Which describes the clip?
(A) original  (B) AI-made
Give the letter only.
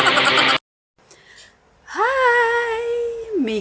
A